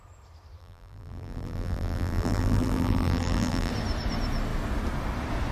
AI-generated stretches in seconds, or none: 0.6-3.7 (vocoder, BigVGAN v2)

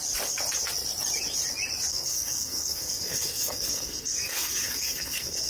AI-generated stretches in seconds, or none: 1.9-5.5 (codec, SNAC)

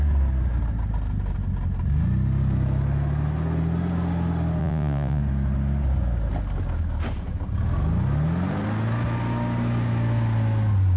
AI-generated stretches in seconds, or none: 4.6-5.2 (vocoder, Vocos)